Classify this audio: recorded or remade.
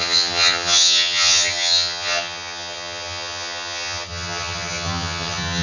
remade